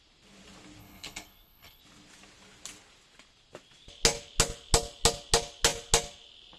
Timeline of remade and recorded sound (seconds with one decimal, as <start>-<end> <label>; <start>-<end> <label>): 0.0-0.8 recorded; 0.8-1.8 remade; 1.8-6.6 recorded